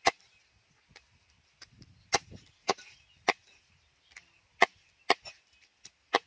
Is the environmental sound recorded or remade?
recorded